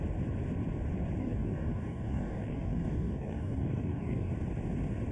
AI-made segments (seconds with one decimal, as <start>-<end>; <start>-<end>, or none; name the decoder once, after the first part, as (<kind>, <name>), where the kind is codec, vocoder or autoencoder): 1.2-4.3 (codec, DAC)